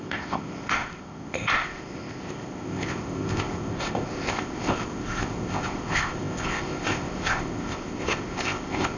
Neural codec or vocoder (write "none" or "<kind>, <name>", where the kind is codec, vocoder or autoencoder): codec, ZipCodec